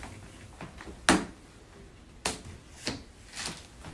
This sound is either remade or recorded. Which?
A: recorded